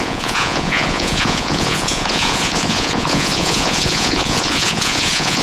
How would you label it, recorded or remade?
remade